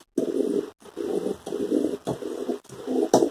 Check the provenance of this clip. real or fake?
real